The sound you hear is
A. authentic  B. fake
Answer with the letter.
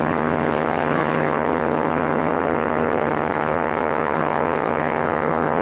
B